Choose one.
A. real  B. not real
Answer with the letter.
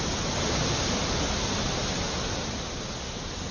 A